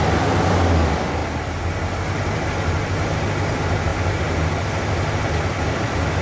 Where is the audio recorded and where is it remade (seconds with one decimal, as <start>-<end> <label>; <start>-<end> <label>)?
0.0-6.2 recorded